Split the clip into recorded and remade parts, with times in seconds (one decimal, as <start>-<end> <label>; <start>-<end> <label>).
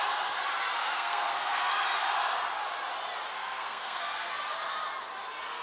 0.0-0.8 recorded; 0.8-1.7 remade; 1.7-3.3 recorded; 3.3-4.3 remade; 4.3-5.6 recorded